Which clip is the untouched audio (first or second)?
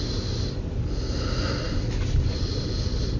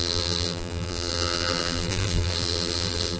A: first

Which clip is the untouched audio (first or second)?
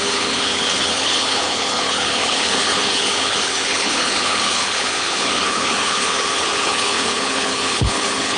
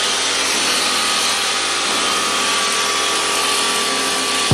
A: second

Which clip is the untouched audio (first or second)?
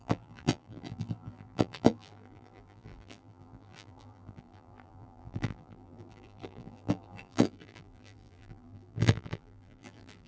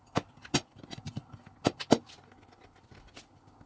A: second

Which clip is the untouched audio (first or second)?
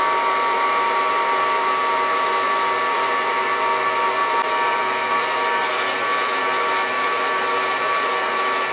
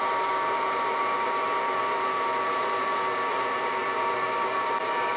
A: first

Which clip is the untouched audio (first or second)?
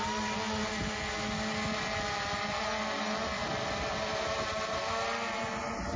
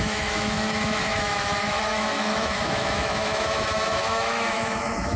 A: first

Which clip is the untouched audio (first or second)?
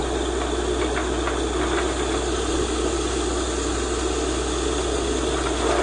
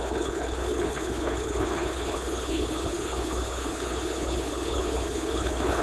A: first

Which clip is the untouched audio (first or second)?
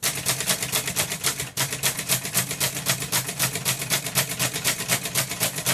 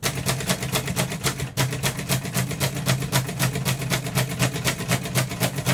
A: second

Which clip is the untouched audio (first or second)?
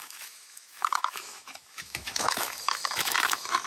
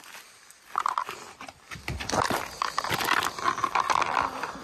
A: second